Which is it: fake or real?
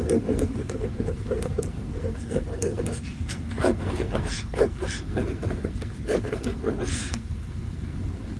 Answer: fake